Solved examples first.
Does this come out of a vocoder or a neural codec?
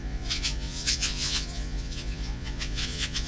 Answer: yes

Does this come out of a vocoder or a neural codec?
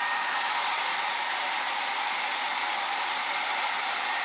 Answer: no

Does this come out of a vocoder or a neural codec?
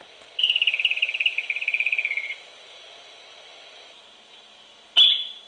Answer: no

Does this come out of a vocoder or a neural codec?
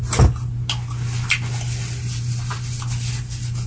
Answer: no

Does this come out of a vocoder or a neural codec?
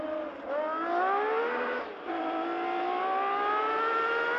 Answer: no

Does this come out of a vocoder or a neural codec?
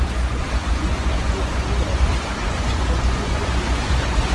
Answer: yes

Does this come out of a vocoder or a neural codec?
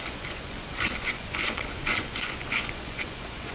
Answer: yes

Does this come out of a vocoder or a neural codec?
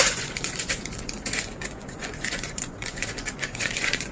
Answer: yes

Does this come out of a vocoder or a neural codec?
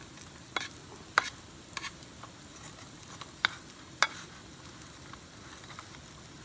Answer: no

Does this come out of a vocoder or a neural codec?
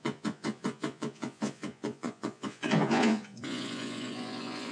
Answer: yes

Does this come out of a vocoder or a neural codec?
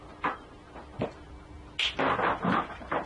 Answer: no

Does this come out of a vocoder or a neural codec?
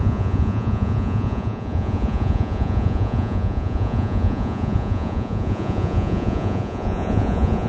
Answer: yes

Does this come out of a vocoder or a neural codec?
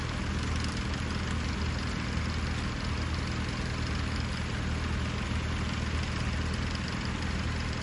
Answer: no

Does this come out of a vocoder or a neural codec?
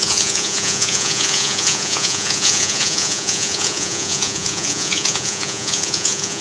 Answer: yes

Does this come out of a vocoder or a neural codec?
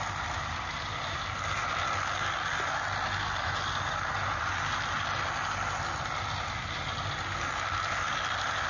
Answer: no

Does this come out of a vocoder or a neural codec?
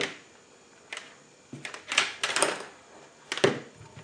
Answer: no